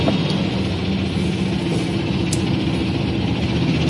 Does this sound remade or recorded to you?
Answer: recorded